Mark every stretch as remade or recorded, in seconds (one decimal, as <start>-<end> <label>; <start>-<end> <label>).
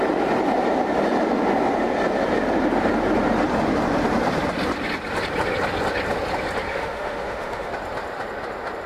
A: 0.0-6.7 recorded; 6.7-7.7 remade; 7.7-8.9 recorded